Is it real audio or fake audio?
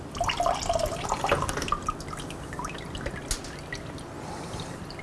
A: real